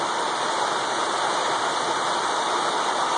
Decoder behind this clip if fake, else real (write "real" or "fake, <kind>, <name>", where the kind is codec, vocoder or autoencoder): real